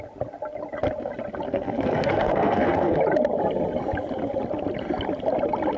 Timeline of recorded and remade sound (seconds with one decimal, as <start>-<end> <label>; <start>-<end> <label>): 0.0-1.5 recorded; 1.5-3.0 remade; 3.0-5.8 recorded